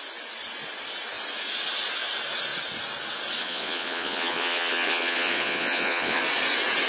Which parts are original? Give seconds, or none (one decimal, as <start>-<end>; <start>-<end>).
0.0-3.4; 6.2-6.9